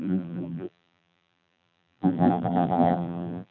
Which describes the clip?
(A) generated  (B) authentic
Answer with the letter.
A